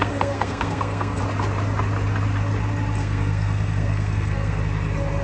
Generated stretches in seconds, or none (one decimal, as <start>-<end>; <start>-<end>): 0.0-1.2; 3.0-4.6